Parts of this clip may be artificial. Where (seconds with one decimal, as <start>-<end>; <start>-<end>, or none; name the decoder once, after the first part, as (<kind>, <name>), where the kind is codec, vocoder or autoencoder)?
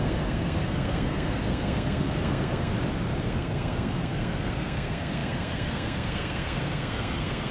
0.0-2.7 (codec, SNAC); 3.2-7.5